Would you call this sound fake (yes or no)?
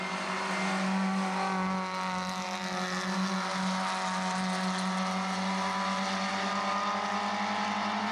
no